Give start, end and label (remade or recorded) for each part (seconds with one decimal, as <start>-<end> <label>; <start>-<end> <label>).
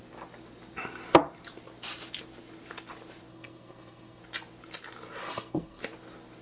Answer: 0.0-3.3 recorded; 3.3-4.2 remade; 4.2-5.2 recorded; 5.2-5.8 remade; 5.8-6.4 recorded